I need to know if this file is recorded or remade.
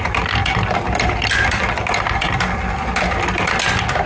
recorded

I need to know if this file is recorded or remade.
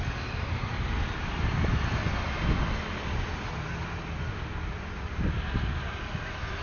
recorded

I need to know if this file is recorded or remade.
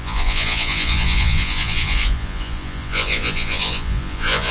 remade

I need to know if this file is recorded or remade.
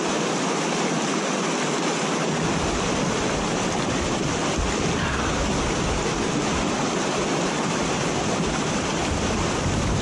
recorded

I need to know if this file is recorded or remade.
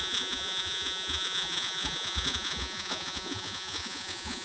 remade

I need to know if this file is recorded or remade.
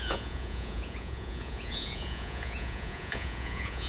remade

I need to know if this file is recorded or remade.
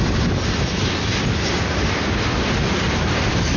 recorded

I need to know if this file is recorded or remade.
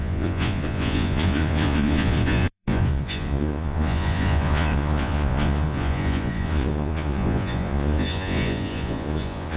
remade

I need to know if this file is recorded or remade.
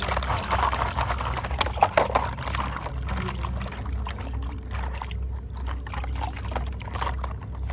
recorded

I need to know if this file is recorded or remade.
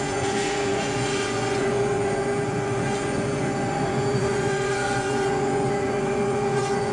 remade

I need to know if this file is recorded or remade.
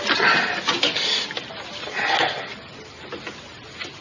recorded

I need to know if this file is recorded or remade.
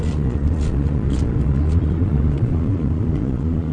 remade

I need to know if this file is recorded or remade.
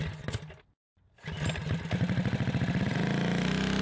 recorded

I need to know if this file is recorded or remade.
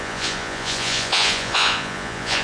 remade